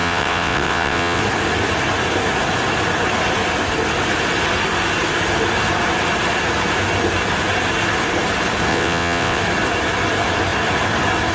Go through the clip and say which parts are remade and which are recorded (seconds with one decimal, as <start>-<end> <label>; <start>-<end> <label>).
0.0-1.2 remade; 1.2-8.7 recorded; 8.7-9.4 remade; 9.4-11.3 recorded

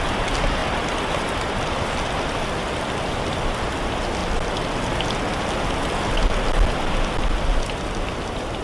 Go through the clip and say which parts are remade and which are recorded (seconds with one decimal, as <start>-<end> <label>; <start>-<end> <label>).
0.0-8.6 recorded

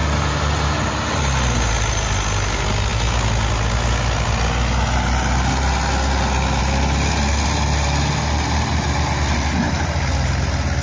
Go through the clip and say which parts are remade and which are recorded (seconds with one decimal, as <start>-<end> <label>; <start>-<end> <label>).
0.0-10.8 recorded